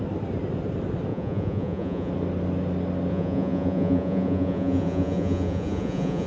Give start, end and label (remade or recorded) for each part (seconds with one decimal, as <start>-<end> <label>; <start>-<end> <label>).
0.0-1.1 recorded; 1.1-2.1 remade; 2.1-3.1 recorded; 3.1-6.3 remade